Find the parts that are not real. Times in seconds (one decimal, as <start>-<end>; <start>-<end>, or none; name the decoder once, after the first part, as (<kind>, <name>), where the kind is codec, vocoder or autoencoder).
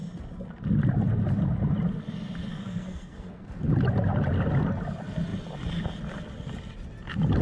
2.5-3.5 (codec, SNAC)